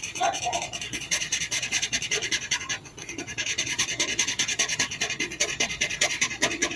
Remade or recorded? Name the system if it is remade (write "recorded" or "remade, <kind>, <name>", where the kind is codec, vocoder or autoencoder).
remade, vocoder, Vocos